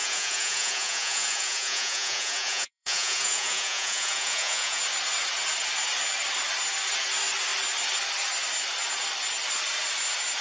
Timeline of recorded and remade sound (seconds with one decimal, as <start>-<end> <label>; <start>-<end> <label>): 0.0-4.8 remade; 4.8-10.4 recorded